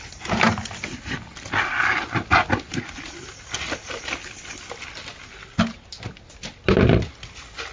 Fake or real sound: real